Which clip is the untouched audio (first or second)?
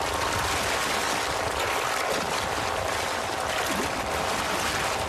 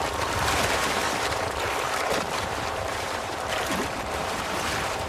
first